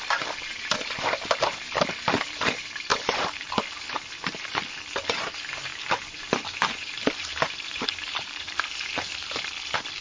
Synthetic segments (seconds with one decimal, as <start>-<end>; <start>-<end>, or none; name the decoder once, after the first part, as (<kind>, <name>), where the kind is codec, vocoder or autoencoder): 2.9-3.5 (vocoder, BigVGAN v2); 5.7-9.4